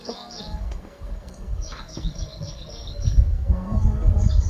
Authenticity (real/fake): fake